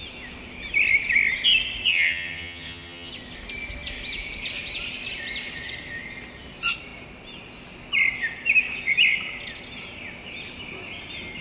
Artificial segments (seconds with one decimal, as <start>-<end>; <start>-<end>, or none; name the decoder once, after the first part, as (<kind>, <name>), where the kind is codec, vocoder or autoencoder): 1.9-3.1 (vocoder, HiFi-GAN)